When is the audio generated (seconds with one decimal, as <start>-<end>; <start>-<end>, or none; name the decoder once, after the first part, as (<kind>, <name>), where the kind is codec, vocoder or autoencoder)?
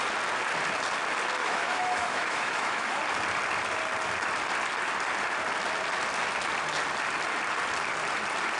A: 1.4-3.0 (autoencoder, DAC-VAE)